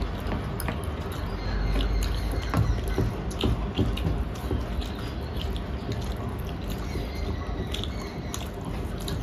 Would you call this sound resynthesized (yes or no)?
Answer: no